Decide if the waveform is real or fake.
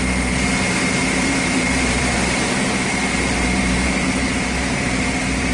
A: fake